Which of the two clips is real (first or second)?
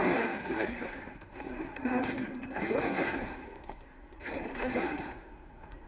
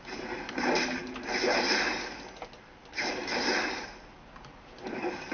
second